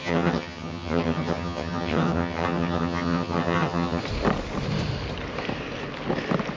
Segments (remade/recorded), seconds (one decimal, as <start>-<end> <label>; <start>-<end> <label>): 0.0-4.0 remade; 4.0-6.6 recorded